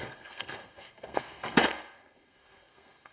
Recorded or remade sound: remade